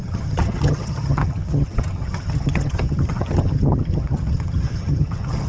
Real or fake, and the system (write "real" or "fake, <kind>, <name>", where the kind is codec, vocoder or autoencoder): fake, vocoder, HiFi-GAN